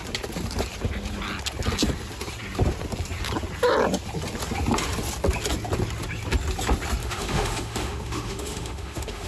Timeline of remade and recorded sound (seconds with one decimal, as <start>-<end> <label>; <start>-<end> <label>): 0.0-7.0 recorded; 7.0-9.3 remade